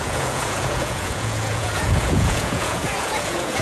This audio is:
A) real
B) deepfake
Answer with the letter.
B